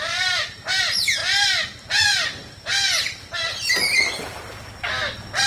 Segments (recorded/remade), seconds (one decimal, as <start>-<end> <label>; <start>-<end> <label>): 0.0-1.2 remade; 1.2-1.9 recorded; 1.9-2.7 remade; 2.7-5.5 recorded